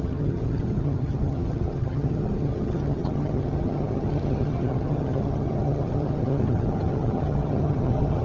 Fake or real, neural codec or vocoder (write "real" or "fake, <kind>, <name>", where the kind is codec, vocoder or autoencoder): fake, vocoder, HiFi-GAN